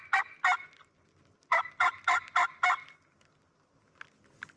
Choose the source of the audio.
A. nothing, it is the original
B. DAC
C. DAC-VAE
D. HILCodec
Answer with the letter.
A